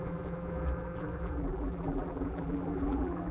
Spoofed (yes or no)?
yes